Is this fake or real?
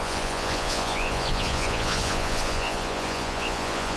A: fake